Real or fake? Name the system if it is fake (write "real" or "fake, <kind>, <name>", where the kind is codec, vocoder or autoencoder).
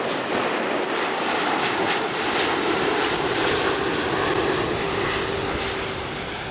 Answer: real